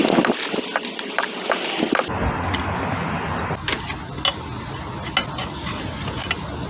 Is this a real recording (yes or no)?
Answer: yes